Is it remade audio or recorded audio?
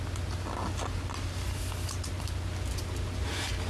recorded